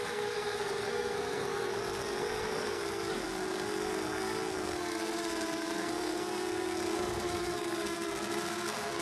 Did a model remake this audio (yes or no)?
yes